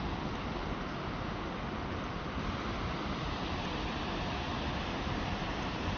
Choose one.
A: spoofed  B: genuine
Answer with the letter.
B